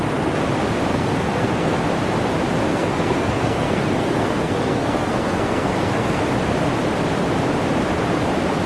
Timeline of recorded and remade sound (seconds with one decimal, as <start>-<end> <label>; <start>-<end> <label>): 0.0-0.9 recorded; 0.9-1.8 remade; 1.8-2.7 recorded; 2.7-6.2 remade; 6.2-8.7 recorded